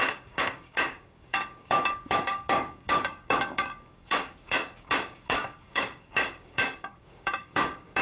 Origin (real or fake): fake